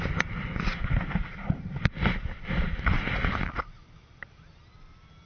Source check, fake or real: real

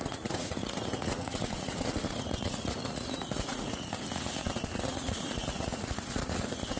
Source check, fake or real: fake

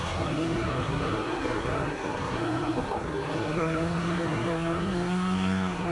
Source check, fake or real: fake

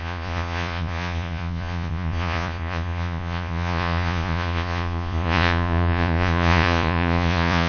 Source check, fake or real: fake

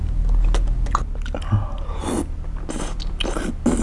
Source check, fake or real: real